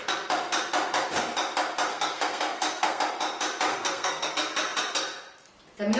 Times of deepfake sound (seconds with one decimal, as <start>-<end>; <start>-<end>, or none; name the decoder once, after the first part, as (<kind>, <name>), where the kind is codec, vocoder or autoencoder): 1.9-3.0 (codec, SNAC); 3.7-4.3